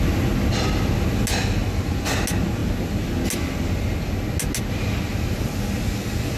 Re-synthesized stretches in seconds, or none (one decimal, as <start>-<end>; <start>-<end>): 1.6-2.1

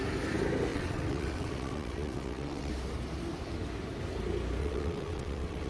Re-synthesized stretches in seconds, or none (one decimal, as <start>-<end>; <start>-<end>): 0.7-2.7; 4.6-5.7

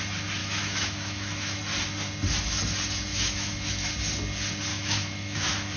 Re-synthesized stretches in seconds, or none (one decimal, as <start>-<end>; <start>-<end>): 0.4-1.6; 3.1-3.9; 4.7-5.8

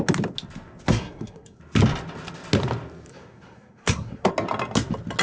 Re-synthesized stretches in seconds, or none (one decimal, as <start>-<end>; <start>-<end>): 0.9-1.6; 3.1-4.3

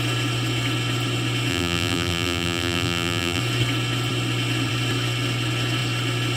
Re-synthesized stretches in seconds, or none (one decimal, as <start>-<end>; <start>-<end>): 1.5-3.4

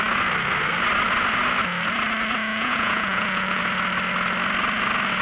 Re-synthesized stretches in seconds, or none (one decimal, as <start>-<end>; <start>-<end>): 2.5-3.6

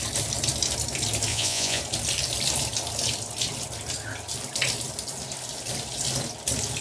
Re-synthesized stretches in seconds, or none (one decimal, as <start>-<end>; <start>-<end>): 1.3-1.8